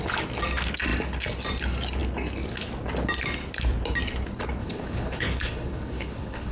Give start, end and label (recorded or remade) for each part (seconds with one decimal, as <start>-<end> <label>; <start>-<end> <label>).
0.0-4.6 recorded; 4.6-6.5 remade